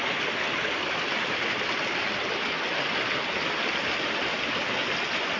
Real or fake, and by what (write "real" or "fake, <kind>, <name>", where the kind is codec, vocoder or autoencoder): real